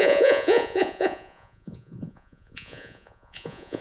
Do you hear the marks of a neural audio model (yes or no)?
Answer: yes